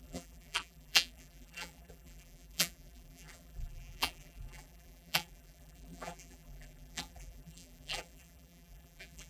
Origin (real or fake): fake